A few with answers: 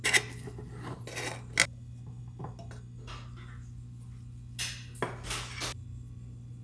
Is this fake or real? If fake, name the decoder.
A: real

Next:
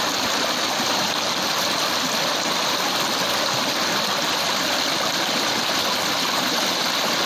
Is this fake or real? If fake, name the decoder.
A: real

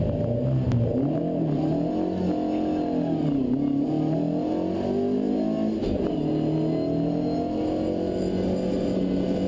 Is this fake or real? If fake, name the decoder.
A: real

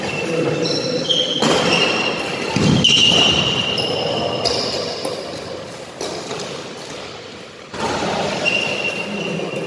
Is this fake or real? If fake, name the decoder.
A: real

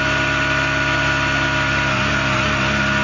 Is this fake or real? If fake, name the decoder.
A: real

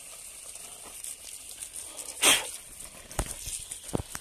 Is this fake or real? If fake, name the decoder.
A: real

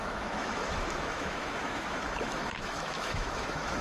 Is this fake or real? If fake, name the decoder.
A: fake, autoencoder, DAC-VAE